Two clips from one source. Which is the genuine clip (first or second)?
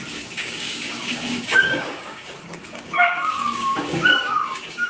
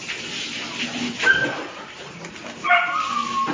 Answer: second